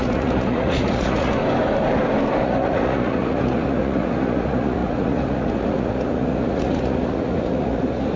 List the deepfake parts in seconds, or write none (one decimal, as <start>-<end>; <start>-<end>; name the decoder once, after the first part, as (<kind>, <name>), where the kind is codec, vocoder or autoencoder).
0.0-1.4 (vocoder, Vocos); 2.4-8.2

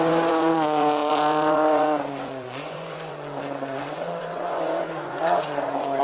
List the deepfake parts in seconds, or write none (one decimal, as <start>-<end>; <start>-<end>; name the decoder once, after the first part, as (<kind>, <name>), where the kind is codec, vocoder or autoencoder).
0.0-6.0 (vocoder, Vocos)

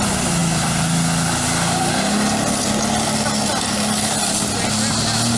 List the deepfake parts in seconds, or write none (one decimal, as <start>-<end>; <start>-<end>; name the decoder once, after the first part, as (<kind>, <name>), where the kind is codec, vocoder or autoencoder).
none

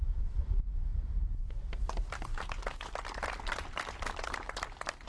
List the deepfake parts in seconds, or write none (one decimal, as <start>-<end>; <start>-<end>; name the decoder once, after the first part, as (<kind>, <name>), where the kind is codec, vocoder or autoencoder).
none

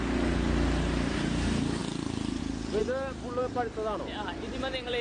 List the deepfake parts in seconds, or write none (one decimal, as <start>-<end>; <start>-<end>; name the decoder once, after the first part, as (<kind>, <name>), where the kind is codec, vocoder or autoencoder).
none